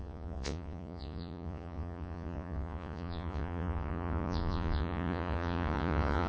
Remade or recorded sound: remade